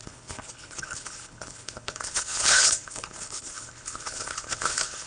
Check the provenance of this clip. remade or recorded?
remade